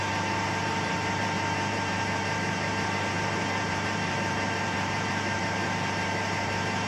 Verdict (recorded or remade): remade